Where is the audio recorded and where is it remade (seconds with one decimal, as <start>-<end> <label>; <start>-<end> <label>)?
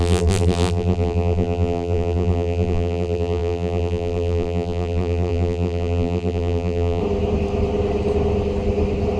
0.0-7.0 remade; 7.0-9.2 recorded